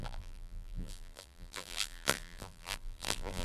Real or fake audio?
fake